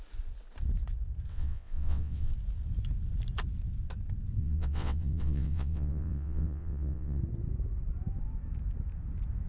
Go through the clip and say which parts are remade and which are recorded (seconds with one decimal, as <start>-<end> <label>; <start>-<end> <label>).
0.0-1.3 recorded; 1.3-2.3 remade; 2.3-4.4 recorded; 4.4-7.2 remade; 7.2-9.5 recorded